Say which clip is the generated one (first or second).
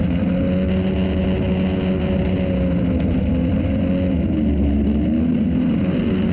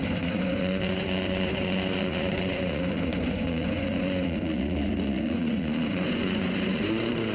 second